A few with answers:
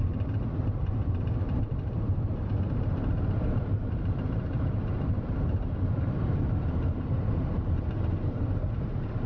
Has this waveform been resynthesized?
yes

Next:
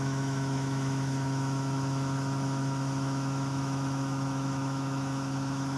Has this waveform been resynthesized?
yes